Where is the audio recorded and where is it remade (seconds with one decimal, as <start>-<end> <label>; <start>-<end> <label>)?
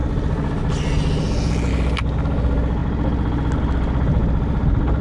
0.0-5.0 recorded